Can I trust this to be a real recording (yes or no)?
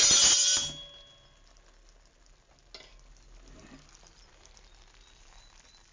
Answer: yes